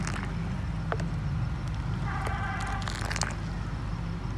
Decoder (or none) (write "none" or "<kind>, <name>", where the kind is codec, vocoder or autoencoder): none